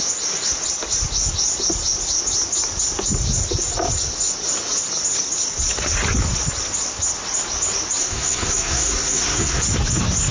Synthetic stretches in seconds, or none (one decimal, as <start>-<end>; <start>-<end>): 8.0-9.6